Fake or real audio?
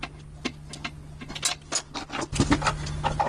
real